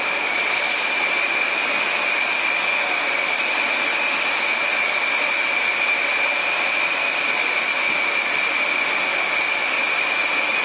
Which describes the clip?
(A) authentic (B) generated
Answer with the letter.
A